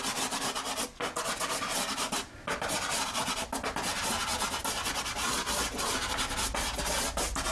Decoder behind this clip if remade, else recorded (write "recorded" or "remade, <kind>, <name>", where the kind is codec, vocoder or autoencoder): recorded